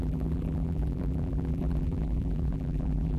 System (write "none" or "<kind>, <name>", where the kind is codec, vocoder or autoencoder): vocoder, BigVGAN v2